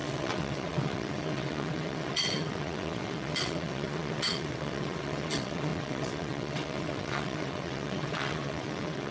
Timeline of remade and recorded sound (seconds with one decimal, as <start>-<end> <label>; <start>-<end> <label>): 0.0-9.1 remade